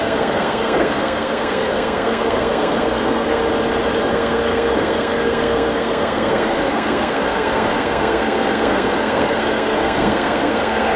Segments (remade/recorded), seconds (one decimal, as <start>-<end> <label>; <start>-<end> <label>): 0.0-3.4 remade; 3.4-4.1 recorded; 4.1-11.0 remade